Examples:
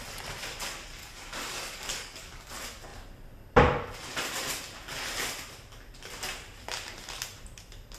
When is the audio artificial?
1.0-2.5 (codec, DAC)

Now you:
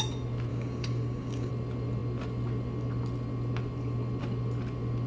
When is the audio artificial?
0.5-1.5 (codec, DAC)

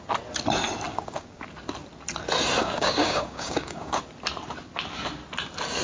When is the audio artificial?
0.9-1.4 (codec, DAC); 2.6-4.0

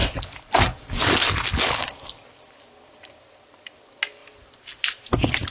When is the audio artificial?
none

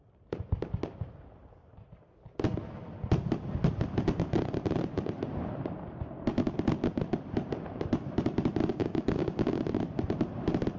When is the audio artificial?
8.7-9.6 (codec, DAC)

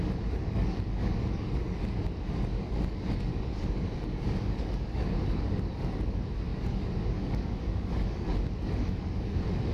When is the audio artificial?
0.0-9.7 (codec, DAC)

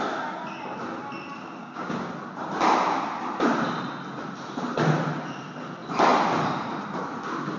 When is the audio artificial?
1.6-2.1 (codec, DAC)